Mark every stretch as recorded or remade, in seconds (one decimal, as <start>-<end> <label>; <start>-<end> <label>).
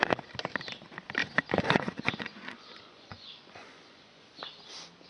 0.0-1.2 recorded; 1.2-4.3 remade; 4.3-5.1 recorded